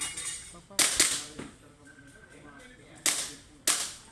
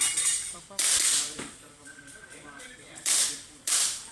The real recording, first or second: first